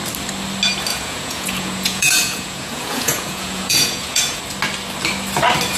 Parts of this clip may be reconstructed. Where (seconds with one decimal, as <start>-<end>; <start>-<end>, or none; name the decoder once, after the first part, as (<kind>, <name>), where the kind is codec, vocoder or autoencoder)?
0.9-4.4 (vocoder, Vocos)